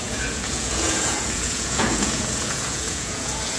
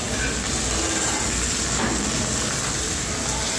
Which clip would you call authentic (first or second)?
second